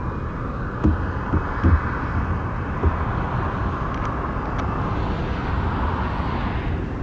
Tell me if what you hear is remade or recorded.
recorded